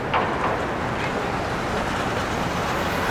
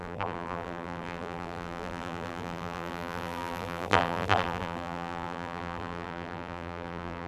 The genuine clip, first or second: first